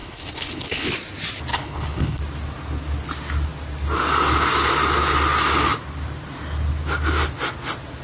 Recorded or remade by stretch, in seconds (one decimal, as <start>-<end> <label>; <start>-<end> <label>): 0.0-0.9 remade; 0.9-1.5 recorded; 1.5-2.2 remade; 2.2-8.0 recorded